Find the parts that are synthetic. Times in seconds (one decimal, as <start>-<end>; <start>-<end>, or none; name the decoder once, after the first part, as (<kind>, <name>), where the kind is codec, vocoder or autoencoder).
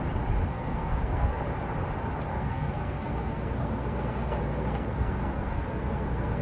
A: 0.5-1.4 (codec, SNAC); 2.3-6.4